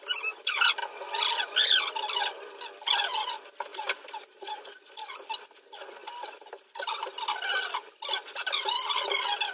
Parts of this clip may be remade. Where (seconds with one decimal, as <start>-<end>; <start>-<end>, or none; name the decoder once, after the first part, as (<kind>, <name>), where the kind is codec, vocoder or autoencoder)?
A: 3.7-5.6 (vocoder, BigVGAN v2); 6.0-7.2